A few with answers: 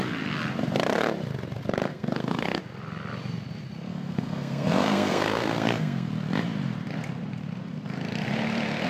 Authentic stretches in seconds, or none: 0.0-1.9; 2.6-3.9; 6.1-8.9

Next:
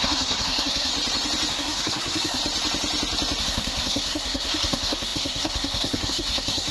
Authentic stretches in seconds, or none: 0.9-1.5; 2.4-3.4

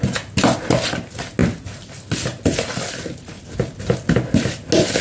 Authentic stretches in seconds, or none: 0.0-5.0

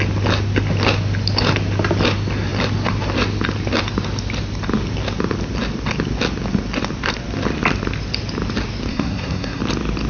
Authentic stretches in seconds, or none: 0.0-8.9; 9.6-10.1

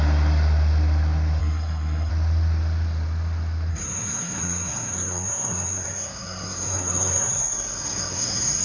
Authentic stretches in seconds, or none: 0.0-1.4; 2.1-3.7

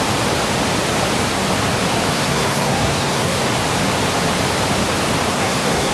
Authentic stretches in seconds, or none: 0.0-2.1; 3.4-5.3

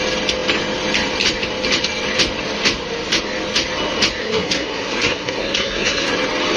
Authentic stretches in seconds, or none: 0.0-4.2; 6.1-6.6

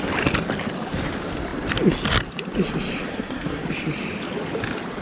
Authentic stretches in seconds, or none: 0.0-3.1; 3.6-5.0